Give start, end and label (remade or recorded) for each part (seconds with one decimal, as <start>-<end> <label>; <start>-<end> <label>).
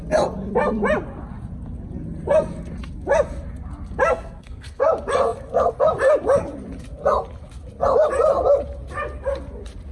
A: 0.0-4.1 recorded; 4.1-4.8 remade; 4.8-9.9 recorded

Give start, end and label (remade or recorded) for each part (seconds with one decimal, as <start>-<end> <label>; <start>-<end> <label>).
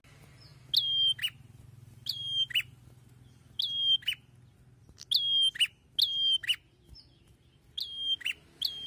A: 0.0-8.9 recorded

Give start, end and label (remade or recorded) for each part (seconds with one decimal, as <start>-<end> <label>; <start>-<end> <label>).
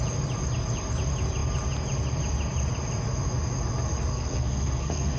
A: 0.0-4.1 recorded; 4.1-5.2 remade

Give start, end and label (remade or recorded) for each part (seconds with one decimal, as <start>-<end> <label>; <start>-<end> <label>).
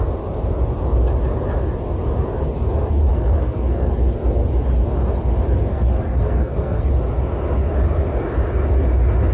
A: 0.0-3.1 recorded; 3.1-3.9 remade; 3.9-5.7 recorded; 5.7-6.9 remade; 6.9-9.3 recorded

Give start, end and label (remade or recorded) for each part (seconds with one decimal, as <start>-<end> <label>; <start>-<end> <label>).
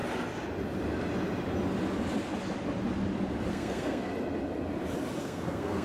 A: 0.0-3.5 recorded; 3.5-4.1 remade; 4.1-5.2 recorded; 5.2-5.8 remade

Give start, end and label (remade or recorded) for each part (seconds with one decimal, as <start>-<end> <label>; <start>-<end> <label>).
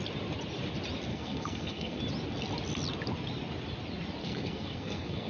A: 0.0-1.1 recorded; 1.1-2.0 remade; 2.0-4.2 recorded; 4.2-5.3 remade